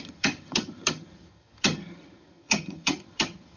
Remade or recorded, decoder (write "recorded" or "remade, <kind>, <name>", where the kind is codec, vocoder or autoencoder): remade, vocoder, HiFi-GAN